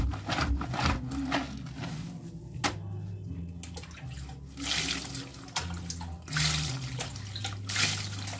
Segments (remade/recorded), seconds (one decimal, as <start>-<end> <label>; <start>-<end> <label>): 0.0-8.4 recorded